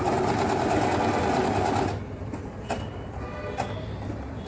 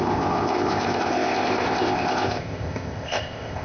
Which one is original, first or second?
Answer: first